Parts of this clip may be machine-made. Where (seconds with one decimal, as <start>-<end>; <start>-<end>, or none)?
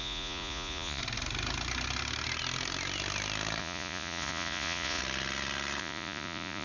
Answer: 0.0-1.0; 3.6-5.0; 5.8-6.6